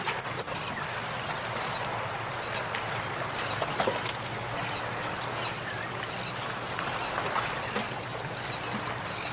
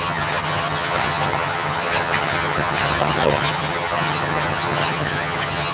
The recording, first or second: first